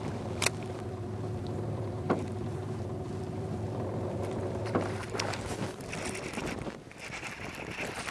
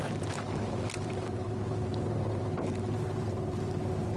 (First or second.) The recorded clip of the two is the second